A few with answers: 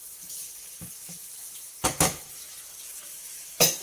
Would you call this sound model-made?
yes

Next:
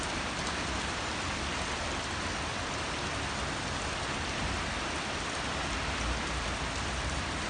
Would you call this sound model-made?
no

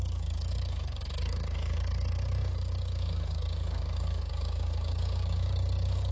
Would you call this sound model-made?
yes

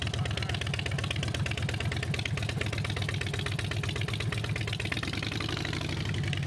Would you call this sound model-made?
no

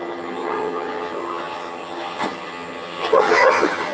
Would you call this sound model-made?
yes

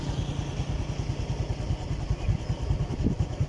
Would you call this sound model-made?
no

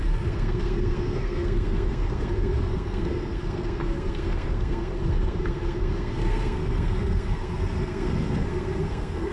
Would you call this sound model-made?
yes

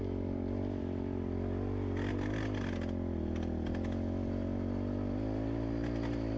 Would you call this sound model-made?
no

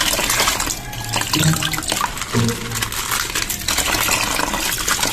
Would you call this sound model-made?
no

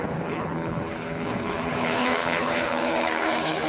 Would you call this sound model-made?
yes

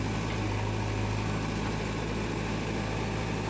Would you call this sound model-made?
no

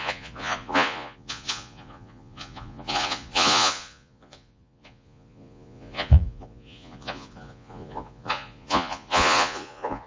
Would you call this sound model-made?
yes